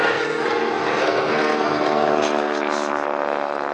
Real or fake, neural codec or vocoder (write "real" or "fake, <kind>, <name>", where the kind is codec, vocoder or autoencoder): fake, codec, SNAC